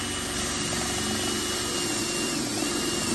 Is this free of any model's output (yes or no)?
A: yes